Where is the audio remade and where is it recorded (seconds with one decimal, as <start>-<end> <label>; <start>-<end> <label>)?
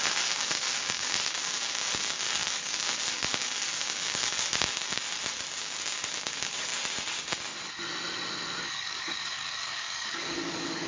0.0-5.0 remade; 5.0-5.6 recorded; 5.6-6.7 remade; 6.7-8.6 recorded; 8.6-10.9 remade